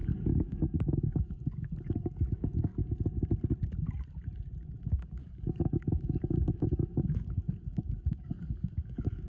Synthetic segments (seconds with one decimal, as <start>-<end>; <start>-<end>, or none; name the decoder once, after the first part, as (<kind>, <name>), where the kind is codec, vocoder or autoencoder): 0.0-2.7 (codec, DAC); 4.9-9.3